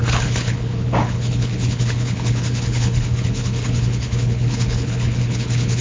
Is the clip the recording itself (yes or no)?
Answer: no